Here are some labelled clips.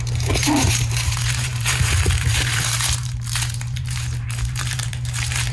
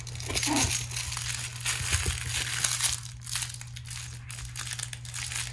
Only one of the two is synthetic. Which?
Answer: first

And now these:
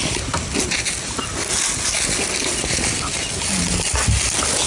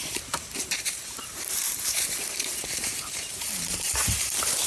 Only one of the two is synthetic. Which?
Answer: second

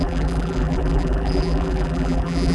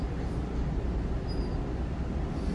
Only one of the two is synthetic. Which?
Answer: first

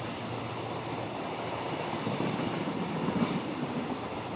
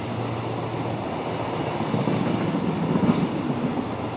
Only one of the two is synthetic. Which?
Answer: first